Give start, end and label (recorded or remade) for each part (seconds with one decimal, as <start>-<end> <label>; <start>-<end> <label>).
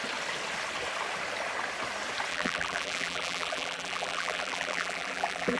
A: 0.0-2.3 recorded; 2.3-5.6 remade